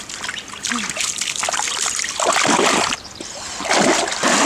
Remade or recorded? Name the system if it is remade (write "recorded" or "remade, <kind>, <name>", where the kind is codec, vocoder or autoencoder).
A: recorded